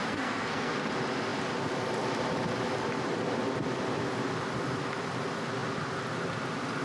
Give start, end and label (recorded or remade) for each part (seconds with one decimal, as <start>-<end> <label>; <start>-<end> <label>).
0.0-0.9 remade; 0.9-6.8 recorded